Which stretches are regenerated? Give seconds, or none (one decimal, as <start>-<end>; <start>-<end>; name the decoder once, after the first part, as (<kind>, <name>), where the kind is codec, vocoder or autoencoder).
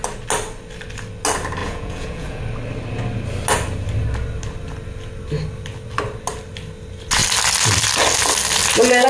1.6-2.4 (vocoder, Vocos)